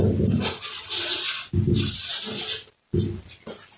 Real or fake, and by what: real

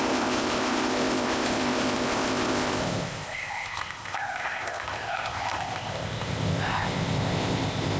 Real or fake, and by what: fake, codec, ZipCodec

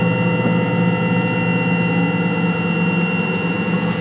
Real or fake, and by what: real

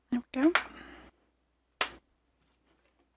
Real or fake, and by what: real